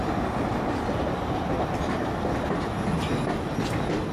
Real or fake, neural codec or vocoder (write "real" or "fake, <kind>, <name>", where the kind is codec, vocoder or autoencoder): real